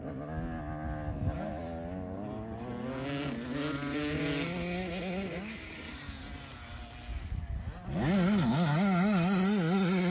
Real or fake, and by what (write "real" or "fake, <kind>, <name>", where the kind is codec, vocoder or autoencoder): real